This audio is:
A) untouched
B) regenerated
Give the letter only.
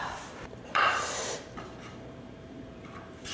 B